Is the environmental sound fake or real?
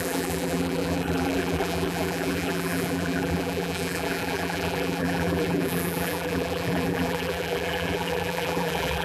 fake